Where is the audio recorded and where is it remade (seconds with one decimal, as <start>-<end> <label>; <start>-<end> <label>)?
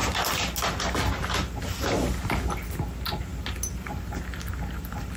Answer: 0.0-5.2 recorded